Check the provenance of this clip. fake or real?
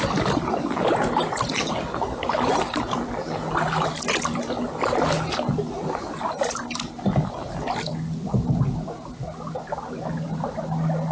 real